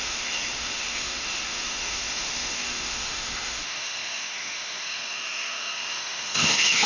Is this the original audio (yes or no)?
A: no